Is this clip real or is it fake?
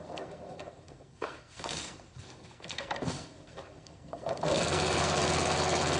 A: fake